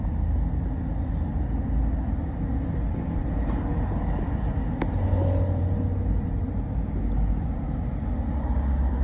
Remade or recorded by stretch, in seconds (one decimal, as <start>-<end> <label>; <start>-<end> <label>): 0.0-9.0 recorded